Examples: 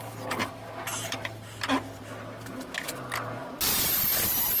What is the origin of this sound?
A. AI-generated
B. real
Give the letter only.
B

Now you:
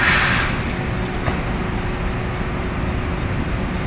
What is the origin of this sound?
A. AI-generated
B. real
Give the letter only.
B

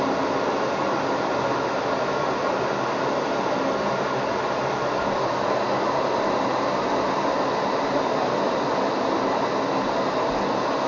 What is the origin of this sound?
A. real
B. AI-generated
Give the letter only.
A